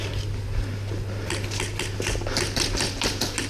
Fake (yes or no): no